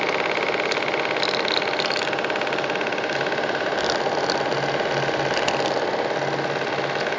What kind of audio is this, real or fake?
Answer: real